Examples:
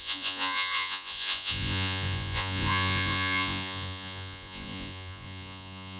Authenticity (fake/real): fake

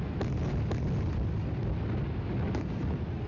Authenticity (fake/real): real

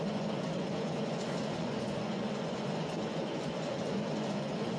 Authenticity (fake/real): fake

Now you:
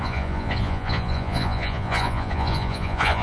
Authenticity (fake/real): fake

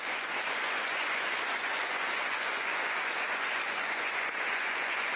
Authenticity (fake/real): fake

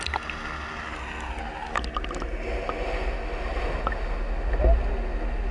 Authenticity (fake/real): real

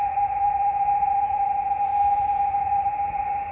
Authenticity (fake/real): fake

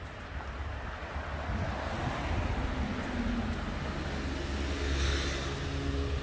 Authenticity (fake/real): real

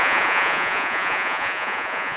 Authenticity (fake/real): fake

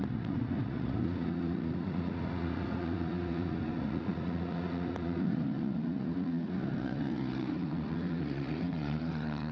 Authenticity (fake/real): fake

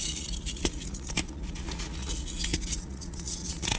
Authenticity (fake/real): fake